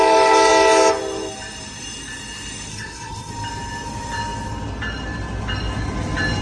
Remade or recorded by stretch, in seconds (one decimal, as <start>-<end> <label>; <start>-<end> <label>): 0.0-2.7 recorded; 2.7-3.3 remade; 3.3-6.4 recorded